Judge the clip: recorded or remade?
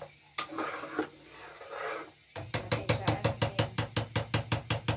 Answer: recorded